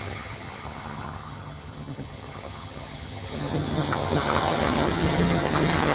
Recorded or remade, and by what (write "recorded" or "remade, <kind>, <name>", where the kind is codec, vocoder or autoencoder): remade, vocoder, HiFi-GAN